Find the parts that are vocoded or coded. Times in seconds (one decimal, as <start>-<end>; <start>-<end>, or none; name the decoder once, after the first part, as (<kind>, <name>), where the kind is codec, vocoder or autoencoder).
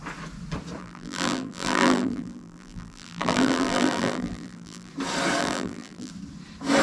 0.8-4.9 (vocoder, BigVGAN v2); 5.4-6.1